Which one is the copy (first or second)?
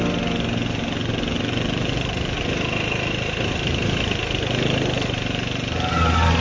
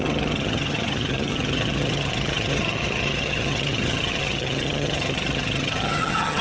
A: second